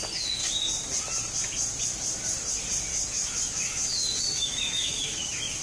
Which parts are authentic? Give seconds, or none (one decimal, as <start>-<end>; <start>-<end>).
0.0-2.9